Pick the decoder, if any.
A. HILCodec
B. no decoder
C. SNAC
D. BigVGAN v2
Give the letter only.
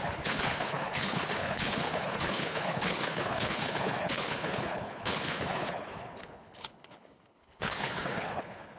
A